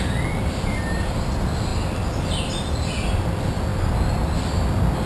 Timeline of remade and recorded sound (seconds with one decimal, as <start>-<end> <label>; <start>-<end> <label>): 0.0-5.1 recorded